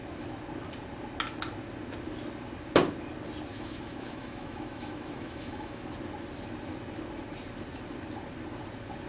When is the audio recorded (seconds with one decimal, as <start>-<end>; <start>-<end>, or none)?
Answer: 0.0-3.5; 5.8-9.1